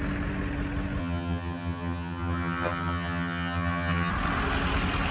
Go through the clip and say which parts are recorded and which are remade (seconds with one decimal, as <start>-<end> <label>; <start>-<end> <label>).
0.0-1.0 recorded; 1.0-4.1 remade; 4.1-5.1 recorded